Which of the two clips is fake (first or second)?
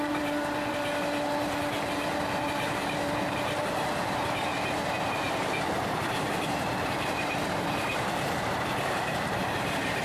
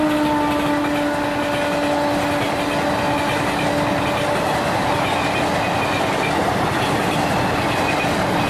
first